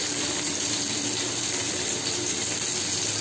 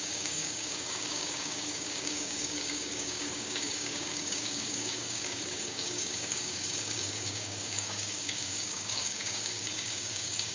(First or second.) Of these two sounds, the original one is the first